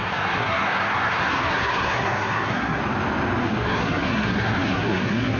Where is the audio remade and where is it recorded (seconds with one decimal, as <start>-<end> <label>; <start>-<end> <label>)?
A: 0.0-2.8 remade; 2.8-3.4 recorded; 3.4-5.4 remade